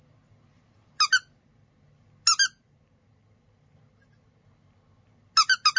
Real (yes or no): yes